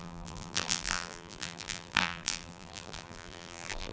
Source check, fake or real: fake